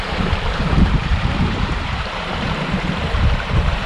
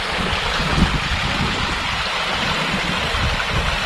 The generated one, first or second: first